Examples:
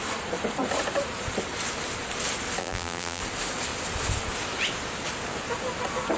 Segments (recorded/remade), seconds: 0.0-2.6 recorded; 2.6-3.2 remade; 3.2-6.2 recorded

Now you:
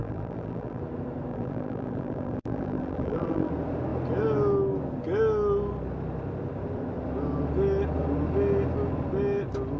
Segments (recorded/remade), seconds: 0.0-0.8 remade; 0.8-1.3 recorded; 1.3-3.5 remade; 3.5-9.8 recorded